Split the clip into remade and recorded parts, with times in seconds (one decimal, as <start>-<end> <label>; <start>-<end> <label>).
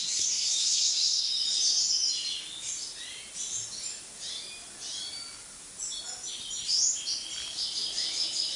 0.0-1.3 remade; 1.3-8.6 recorded